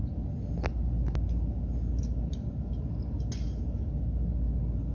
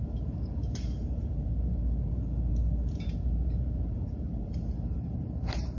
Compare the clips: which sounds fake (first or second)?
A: second